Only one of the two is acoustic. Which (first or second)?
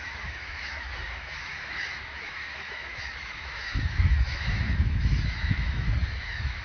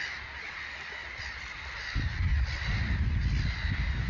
second